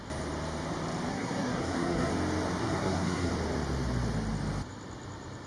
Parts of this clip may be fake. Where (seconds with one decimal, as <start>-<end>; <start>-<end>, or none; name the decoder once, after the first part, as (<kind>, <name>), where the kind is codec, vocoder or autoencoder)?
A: 1.1-2.1 (codec, SNAC); 2.6-3.3